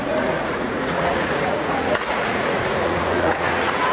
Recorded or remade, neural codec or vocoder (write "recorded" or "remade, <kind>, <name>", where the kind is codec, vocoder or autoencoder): remade, vocoder, Vocos